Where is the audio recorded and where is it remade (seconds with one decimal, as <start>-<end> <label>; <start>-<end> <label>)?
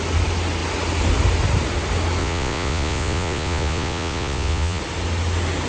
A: 0.0-2.2 recorded; 2.2-4.8 remade; 4.8-5.7 recorded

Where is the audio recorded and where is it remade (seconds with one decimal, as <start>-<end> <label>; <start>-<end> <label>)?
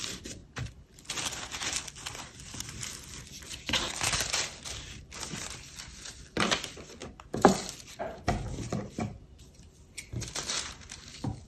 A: 0.0-11.5 recorded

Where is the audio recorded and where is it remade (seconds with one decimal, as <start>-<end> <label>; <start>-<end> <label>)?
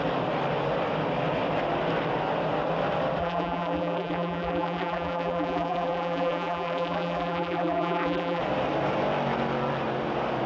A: 0.0-3.2 recorded; 3.2-8.4 remade; 8.4-10.5 recorded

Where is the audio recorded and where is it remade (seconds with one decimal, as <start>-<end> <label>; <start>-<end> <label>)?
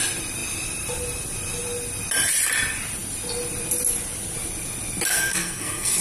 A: 0.0-5.1 recorded; 5.1-6.0 remade